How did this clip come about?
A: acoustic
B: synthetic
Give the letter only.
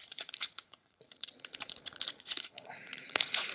B